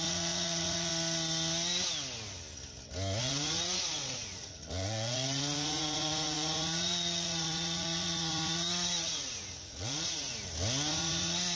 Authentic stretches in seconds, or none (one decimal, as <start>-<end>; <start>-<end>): 0.9-3.2; 10.3-10.9